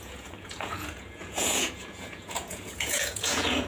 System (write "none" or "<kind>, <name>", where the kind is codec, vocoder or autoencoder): vocoder, Vocos